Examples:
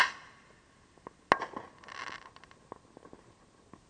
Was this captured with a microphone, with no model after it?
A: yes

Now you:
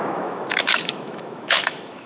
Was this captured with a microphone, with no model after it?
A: no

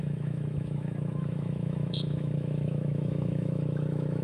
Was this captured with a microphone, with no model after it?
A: no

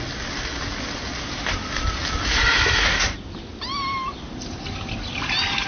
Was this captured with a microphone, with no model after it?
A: yes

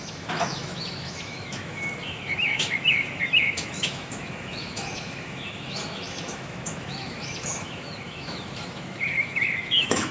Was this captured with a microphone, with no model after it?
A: no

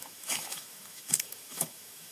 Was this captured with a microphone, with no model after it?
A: no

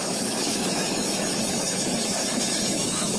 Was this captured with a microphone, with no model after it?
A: no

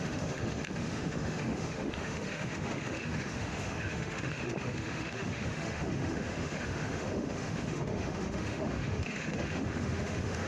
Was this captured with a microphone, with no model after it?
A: no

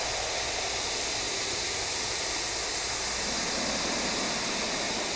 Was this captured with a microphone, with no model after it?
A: yes